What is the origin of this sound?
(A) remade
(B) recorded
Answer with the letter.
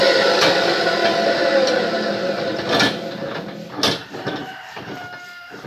B